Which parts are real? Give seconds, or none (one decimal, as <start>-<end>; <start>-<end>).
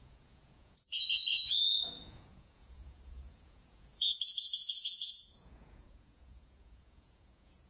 none